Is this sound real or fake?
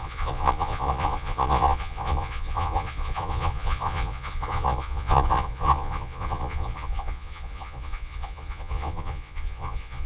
fake